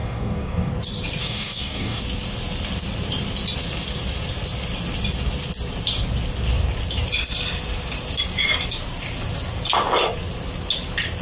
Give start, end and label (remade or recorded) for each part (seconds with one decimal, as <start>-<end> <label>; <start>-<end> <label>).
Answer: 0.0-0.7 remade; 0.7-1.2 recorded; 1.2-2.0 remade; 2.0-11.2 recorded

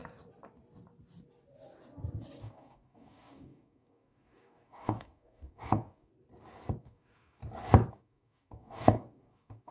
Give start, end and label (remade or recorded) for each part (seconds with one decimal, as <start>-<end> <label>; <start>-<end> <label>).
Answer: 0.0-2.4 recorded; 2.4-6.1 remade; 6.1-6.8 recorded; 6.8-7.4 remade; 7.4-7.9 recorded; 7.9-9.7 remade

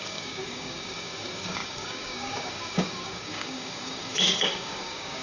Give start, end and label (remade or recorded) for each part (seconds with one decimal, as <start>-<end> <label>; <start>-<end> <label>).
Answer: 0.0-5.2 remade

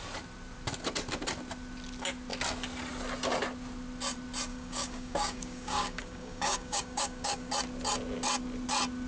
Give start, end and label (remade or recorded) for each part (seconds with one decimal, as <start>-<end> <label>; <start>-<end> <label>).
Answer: 0.0-4.5 recorded; 4.5-7.5 remade; 7.5-9.1 recorded

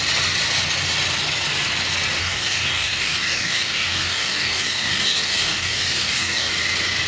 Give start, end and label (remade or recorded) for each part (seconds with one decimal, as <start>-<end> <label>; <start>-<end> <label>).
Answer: 0.0-2.2 recorded; 2.2-6.5 remade; 6.5-7.1 recorded